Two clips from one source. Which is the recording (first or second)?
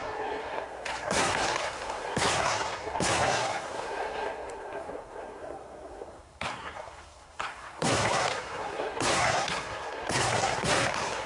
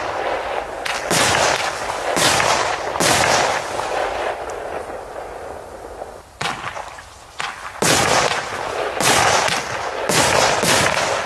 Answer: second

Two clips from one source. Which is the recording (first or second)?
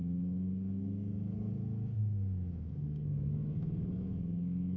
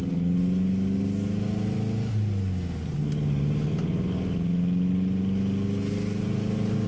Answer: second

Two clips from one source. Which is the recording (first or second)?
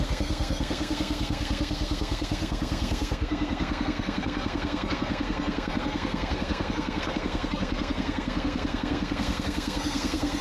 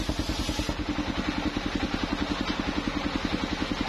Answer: second